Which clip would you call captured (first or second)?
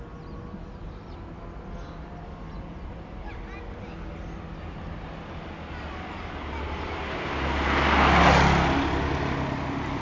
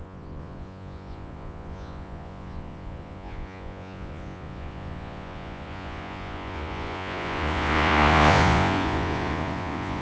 first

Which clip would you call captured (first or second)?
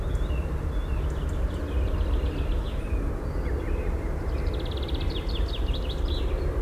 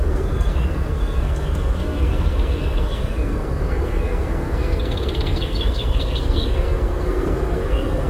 first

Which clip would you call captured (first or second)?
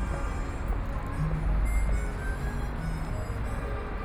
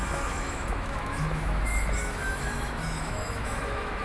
first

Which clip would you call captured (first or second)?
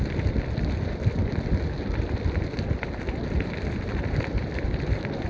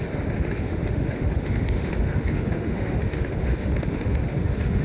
first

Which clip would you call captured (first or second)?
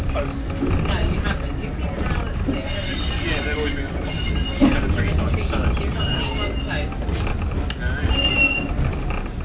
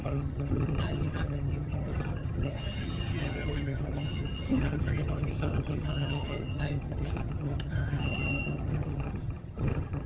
first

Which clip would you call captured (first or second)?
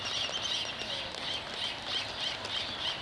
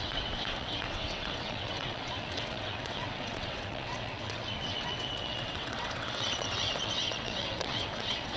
first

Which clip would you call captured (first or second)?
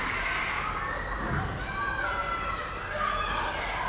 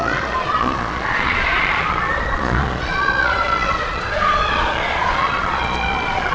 first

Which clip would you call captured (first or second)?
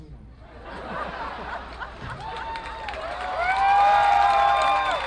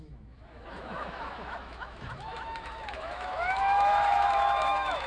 first